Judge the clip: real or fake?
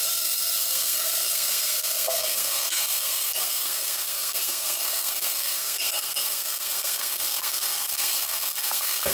fake